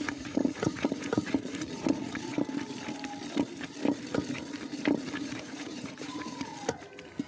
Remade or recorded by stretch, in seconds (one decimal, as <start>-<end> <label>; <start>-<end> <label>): 0.0-2.3 remade; 2.3-5.2 recorded; 5.2-6.5 remade; 6.5-7.3 recorded